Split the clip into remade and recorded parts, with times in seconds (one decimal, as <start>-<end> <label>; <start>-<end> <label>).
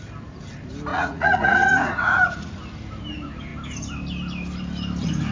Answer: 0.0-0.9 recorded; 0.9-2.6 remade; 2.6-5.3 recorded